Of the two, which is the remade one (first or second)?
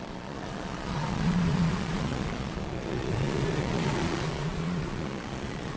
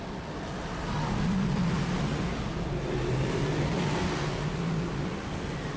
first